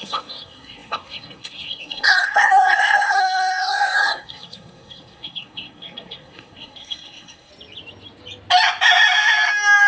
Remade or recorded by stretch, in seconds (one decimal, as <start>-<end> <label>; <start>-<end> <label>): 0.0-7.5 remade; 7.5-9.9 recorded